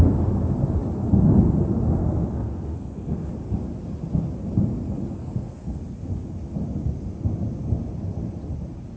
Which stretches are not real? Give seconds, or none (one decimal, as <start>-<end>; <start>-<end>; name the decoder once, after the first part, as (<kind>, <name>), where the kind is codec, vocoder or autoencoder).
2.0-3.3 (codec, SNAC); 5.2-5.8